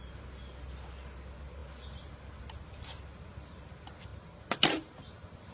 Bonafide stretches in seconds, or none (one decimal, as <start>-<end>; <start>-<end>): 0.0-5.5